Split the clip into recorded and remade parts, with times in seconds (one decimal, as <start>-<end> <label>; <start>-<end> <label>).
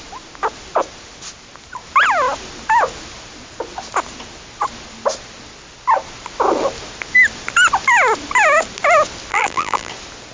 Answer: 0.0-9.3 recorded; 9.3-9.9 remade; 9.9-10.3 recorded